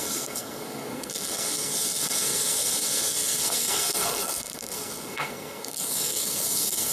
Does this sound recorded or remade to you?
remade